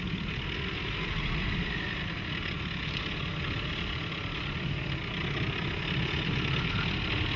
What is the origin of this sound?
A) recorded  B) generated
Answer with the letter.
A